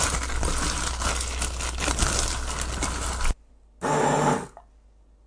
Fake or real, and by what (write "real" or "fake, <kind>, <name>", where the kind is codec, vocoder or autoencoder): real